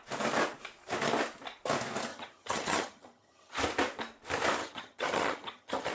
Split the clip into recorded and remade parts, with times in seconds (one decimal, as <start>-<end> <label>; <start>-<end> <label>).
0.0-2.1 recorded; 2.1-3.6 remade; 3.6-4.6 recorded; 4.6-5.9 remade